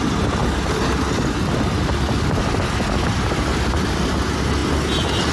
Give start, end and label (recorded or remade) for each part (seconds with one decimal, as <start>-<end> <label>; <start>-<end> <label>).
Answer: 0.0-5.3 recorded